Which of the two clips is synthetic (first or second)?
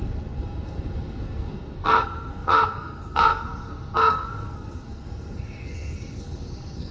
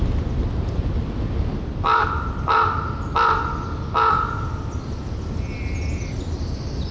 first